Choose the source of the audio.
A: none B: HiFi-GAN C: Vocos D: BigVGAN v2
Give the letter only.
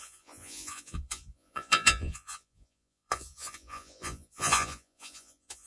C